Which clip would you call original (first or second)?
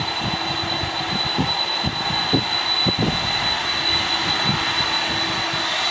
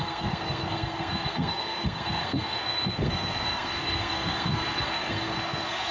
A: first